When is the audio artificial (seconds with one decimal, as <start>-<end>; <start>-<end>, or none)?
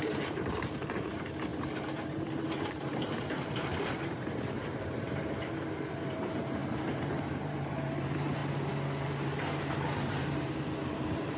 0.0-8.4; 9.8-11.4